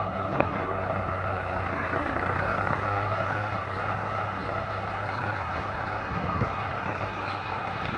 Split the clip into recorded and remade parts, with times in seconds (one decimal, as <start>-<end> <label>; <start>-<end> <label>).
0.0-8.0 remade

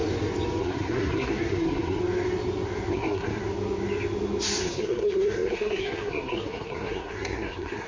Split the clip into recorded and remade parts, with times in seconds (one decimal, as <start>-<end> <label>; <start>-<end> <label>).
0.0-0.6 recorded; 0.6-2.0 remade; 2.0-2.9 recorded; 2.9-3.4 remade; 3.4-4.6 recorded; 4.6-7.9 remade

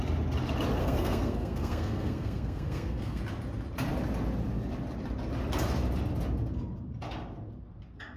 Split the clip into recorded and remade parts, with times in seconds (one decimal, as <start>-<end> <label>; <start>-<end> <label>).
0.0-0.8 recorded; 0.8-3.2 remade; 3.2-8.2 recorded

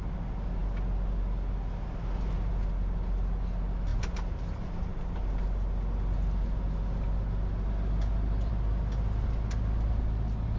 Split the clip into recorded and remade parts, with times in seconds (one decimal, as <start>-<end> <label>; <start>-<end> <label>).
0.0-10.6 recorded

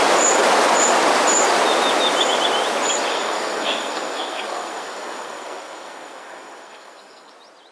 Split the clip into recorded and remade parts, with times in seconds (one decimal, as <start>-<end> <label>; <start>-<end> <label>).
0.0-3.1 recorded; 3.1-7.3 remade; 7.3-7.7 recorded